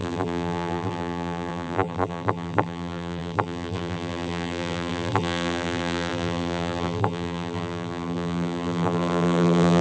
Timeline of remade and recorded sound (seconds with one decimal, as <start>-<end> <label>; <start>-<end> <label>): 0.0-9.8 remade